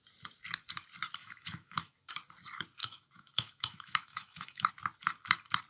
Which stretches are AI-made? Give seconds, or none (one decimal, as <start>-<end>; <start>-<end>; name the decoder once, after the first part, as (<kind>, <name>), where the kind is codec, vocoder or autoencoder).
1.2-2.1 (autoencoder, DAC-VAE); 2.8-4.7